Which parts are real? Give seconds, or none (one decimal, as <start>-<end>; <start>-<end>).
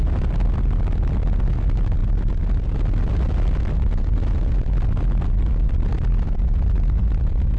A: 0.0-7.6